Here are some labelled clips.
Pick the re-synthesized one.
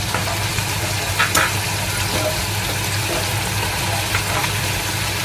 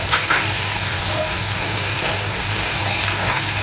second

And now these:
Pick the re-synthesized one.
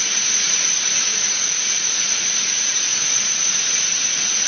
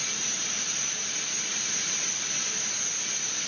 first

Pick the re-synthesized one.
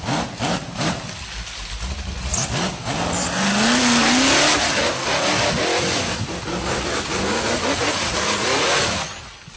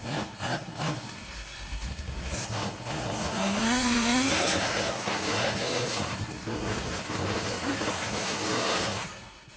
second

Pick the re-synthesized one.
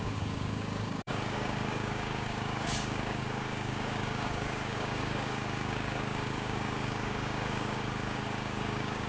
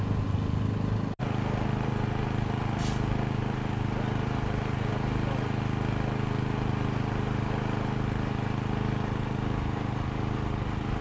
first